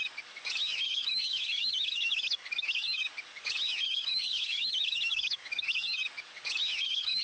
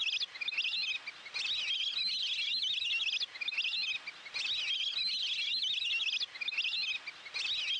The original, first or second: second